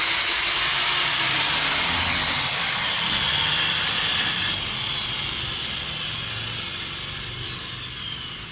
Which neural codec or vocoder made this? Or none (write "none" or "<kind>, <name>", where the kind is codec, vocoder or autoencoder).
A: none